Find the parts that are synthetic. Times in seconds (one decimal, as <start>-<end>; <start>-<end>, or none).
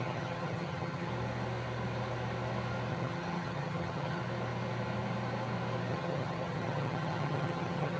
0.0-1.1; 2.9-4.2; 5.9-8.0